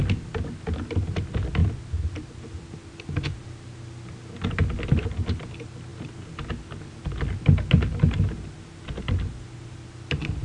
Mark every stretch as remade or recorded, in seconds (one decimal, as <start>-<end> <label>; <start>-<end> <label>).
0.0-10.4 recorded